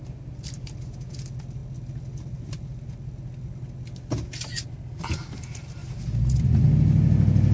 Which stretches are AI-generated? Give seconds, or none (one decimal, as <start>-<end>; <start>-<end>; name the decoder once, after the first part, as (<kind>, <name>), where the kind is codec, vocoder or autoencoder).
5.8-6.5 (vocoder, BigVGAN v2)